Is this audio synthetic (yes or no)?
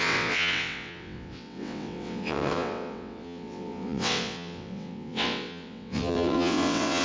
yes